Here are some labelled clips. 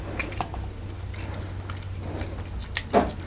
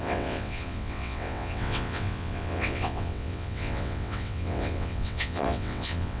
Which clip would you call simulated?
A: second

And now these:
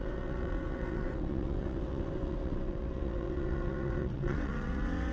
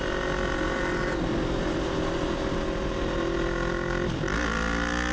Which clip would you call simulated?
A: first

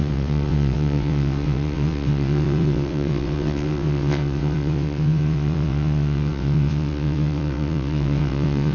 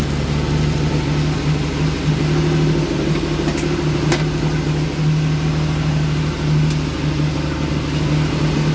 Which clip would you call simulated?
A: first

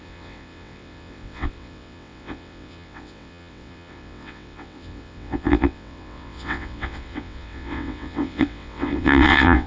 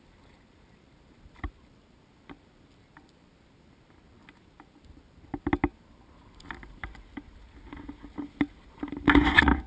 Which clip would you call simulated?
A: first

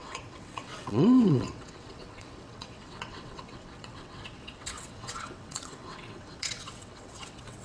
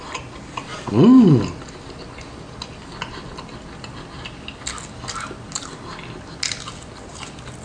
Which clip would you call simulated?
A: first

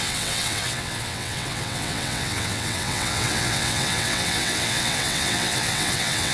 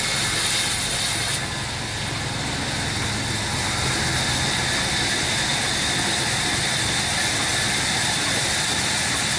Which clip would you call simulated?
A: first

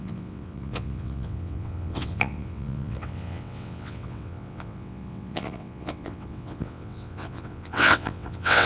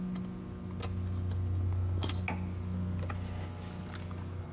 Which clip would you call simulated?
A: first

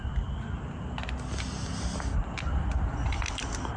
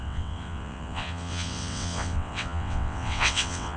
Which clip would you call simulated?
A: second